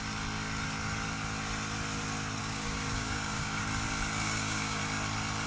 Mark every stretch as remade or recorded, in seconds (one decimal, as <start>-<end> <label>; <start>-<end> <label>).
0.0-2.4 recorded; 2.4-3.6 remade; 3.6-4.2 recorded; 4.2-4.8 remade; 4.8-5.5 recorded